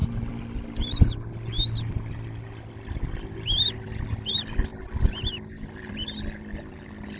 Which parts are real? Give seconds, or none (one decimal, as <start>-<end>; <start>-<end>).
0.0-7.2